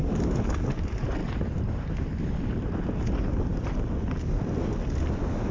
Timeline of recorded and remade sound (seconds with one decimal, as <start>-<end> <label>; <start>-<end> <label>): 0.0-5.5 recorded